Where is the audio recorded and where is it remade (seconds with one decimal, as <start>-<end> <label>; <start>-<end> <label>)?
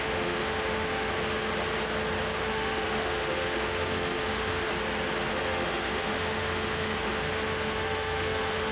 0.0-1.1 remade; 1.1-2.4 recorded; 2.4-4.7 remade; 4.7-5.3 recorded; 5.3-8.7 remade